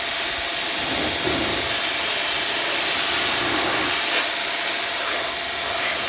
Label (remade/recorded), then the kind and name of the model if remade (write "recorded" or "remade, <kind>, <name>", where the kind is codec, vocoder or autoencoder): recorded